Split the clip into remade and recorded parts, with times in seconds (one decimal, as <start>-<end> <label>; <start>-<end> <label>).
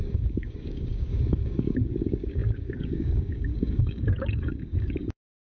0.0-5.4 remade